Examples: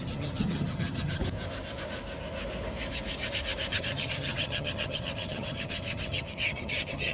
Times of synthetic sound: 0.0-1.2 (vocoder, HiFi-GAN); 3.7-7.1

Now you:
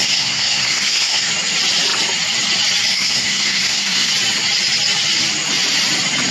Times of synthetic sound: 0.0-1.3 (codec, SNAC); 2.9-4.1

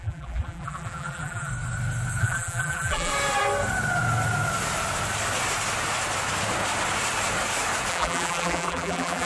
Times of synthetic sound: 0.0-1.5 (vocoder, BigVGAN v2); 2.2-3.1; 7.9-9.3

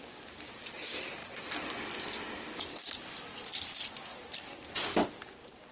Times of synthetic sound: none